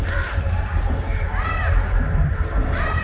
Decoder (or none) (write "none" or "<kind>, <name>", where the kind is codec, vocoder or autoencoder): vocoder, BigVGAN v2